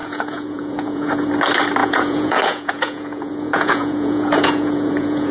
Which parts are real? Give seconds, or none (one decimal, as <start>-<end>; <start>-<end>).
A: 1.3-1.8